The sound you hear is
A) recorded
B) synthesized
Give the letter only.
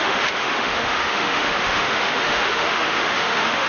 B